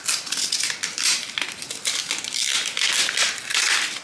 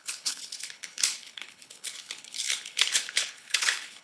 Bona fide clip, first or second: first